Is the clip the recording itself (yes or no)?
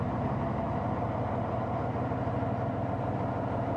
yes